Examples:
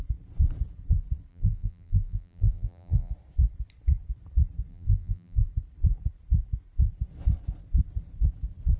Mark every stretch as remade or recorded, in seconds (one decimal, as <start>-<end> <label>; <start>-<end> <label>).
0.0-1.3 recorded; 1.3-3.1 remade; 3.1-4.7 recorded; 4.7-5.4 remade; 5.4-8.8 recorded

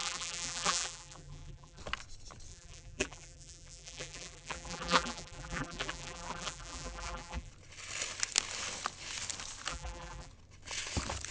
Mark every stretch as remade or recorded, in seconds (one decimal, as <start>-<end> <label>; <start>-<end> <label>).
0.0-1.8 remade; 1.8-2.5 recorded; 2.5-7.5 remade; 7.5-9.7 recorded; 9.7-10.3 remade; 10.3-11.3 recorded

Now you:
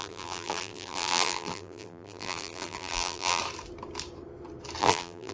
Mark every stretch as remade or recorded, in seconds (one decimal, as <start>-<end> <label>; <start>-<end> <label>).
0.0-3.4 remade; 3.4-4.8 recorded; 4.8-5.3 remade

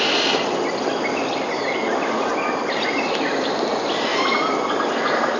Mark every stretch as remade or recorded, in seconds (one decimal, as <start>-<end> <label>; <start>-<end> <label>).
0.0-4.1 remade; 4.1-4.7 recorded; 4.7-5.4 remade

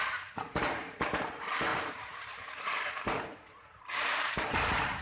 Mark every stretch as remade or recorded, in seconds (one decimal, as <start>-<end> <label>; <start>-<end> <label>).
0.0-5.0 remade

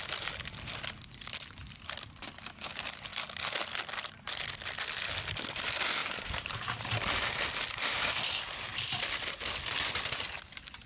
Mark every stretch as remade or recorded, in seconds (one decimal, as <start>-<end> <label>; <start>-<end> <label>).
0.0-6.0 recorded; 6.0-6.9 remade; 6.9-10.9 recorded

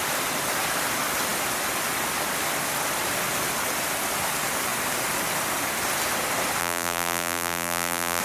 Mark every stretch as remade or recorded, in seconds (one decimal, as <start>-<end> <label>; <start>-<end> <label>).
0.0-6.6 recorded; 6.6-8.2 remade

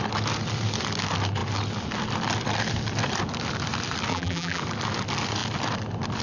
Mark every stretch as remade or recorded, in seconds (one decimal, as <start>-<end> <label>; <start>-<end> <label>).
0.0-4.1 recorded; 4.1-4.6 remade; 4.6-6.2 recorded